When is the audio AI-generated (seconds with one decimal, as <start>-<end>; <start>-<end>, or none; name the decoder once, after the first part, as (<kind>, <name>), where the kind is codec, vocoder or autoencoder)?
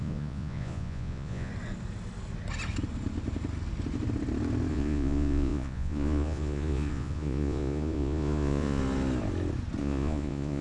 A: 0.0-1.5 (vocoder, Vocos); 4.7-8.8; 9.8-10.6